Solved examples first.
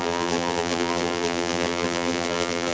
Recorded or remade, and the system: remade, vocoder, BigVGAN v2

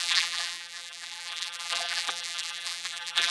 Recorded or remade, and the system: remade, vocoder, BigVGAN v2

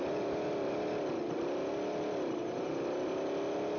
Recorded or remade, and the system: recorded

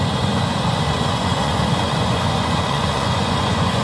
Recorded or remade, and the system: remade, vocoder, Vocos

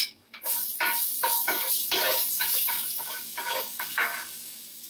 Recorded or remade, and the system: remade, codec, DAC